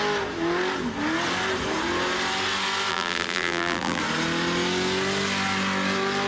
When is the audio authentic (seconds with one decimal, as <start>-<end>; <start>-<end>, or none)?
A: 0.0-2.9; 4.0-6.3